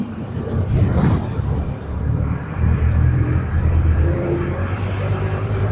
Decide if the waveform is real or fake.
fake